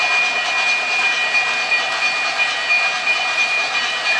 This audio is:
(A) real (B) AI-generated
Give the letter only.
A